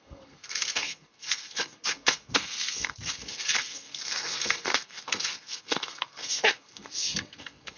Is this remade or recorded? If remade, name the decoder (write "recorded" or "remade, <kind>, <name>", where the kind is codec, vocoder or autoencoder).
remade, codec, SNAC